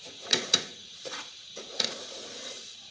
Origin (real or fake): fake